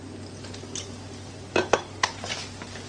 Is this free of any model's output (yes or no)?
yes